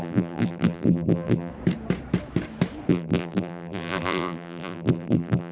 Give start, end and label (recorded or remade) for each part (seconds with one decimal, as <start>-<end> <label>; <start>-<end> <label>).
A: 0.0-1.5 remade; 1.5-2.9 recorded; 2.9-5.5 remade